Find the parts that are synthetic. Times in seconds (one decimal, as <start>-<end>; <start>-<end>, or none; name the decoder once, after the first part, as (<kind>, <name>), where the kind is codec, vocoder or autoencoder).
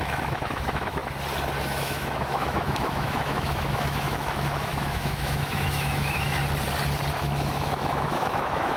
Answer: 0.0-1.0 (autoencoder, DAC-VAE); 1.6-6.4; 7.1-8.8